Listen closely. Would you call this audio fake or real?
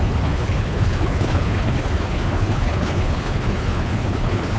fake